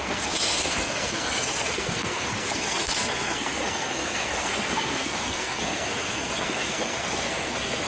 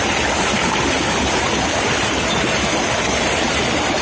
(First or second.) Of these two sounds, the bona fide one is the second